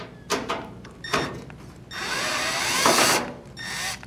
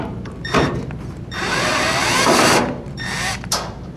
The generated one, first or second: second